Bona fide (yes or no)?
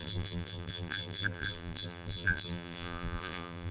no